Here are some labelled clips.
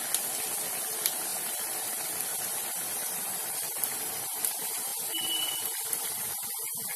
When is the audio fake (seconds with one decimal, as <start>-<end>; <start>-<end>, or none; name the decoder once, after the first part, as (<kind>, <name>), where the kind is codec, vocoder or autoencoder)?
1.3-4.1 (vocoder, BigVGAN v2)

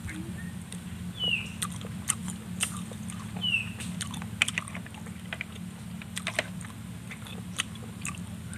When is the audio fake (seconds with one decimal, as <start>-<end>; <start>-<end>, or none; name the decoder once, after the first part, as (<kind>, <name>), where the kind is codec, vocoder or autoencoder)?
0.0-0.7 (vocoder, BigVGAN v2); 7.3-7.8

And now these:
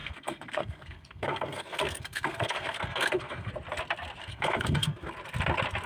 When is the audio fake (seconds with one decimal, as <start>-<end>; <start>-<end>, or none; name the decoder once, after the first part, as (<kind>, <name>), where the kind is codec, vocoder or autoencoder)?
0.0-3.5 (codec, SNAC); 4.2-5.1

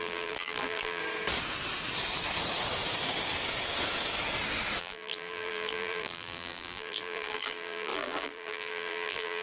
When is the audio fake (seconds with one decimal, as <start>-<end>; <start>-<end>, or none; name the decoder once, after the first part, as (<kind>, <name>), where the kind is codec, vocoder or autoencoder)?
0.0-1.0 (vocoder, BigVGAN v2); 4.8-9.4

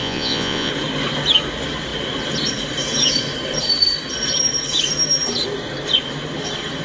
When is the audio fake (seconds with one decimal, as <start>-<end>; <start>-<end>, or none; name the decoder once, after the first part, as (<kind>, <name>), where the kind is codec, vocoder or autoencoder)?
0.0-0.7 (vocoder, Vocos)